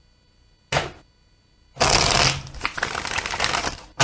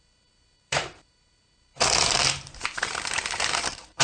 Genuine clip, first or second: first